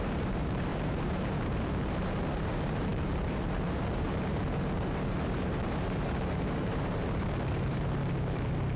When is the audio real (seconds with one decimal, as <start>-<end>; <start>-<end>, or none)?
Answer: none

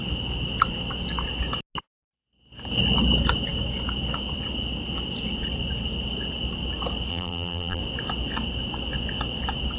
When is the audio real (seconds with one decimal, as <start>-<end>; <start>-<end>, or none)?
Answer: 0.0-7.1; 7.8-9.8

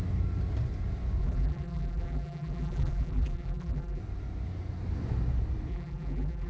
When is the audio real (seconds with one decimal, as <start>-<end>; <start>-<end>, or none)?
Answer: 0.0-1.2; 4.0-5.7

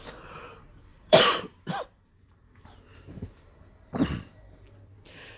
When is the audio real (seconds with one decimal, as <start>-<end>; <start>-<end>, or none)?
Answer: 0.0-0.9; 3.5-5.4

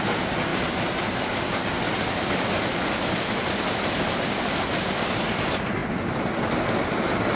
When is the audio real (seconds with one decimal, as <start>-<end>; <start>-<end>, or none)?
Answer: 0.0-0.5; 4.9-7.4

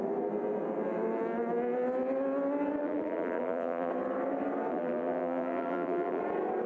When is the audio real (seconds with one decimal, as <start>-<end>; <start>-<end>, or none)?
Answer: 0.0-2.8; 3.9-4.7; 6.2-6.7